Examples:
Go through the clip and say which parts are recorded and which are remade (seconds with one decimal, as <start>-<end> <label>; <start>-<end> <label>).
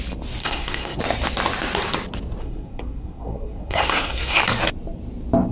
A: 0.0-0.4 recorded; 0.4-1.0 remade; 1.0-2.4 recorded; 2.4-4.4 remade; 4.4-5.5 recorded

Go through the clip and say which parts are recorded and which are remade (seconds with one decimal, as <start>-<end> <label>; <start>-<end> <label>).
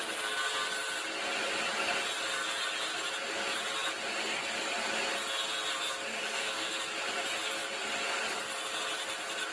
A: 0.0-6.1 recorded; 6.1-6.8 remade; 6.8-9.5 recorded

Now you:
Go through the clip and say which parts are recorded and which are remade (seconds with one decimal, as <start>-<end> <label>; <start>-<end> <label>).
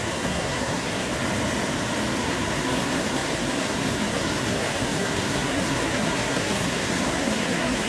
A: 0.0-1.1 remade; 1.1-2.2 recorded; 2.2-7.9 remade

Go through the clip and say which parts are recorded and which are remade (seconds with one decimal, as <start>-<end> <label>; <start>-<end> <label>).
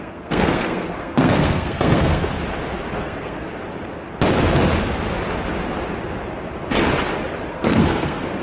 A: 0.0-2.3 remade; 2.3-2.9 recorded; 2.9-3.4 remade; 3.4-7.5 recorded; 7.5-8.4 remade